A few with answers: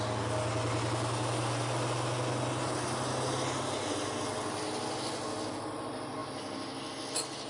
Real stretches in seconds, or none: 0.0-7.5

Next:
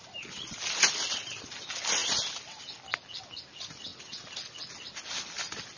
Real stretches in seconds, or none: 0.0-5.8

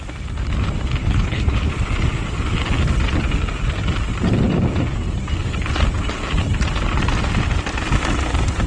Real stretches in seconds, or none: 0.0-1.0; 1.7-8.7

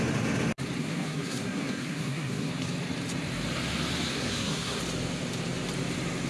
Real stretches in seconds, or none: 0.0-0.8; 2.5-4.1; 4.8-6.3

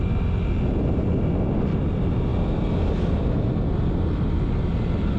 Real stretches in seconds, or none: 0.0-5.2

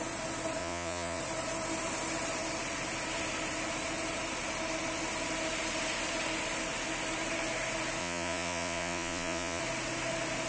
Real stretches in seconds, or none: 0.0-0.6; 1.2-8.0; 9.6-10.5

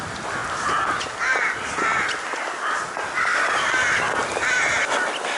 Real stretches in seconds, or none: 0.4-3.2